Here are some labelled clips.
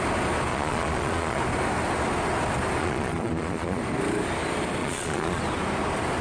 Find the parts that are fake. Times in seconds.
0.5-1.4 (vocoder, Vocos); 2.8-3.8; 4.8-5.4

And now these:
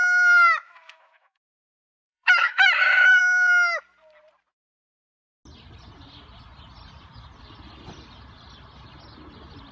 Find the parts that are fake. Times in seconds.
0.0-3.2 (autoencoder, DAC-VAE)

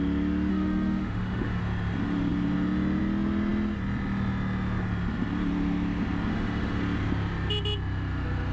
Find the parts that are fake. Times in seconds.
0.5-1.6 (autoencoder, DAC-VAE); 6.3-6.8

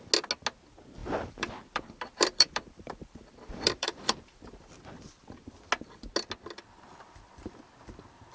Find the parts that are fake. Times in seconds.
1.0-5.1 (vocoder, BigVGAN v2)

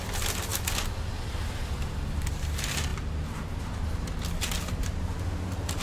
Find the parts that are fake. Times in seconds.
none

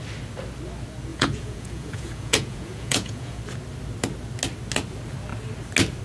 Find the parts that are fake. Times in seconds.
1.1-3.4 (vocoder, Vocos)